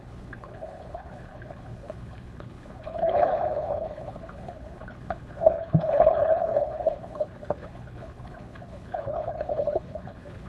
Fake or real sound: fake